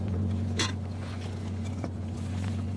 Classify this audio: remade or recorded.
remade